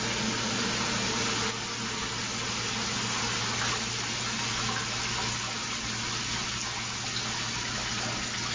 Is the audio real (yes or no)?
yes